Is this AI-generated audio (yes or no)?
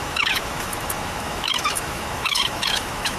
yes